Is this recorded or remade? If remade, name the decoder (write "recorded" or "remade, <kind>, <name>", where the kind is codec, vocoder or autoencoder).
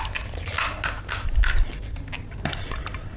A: recorded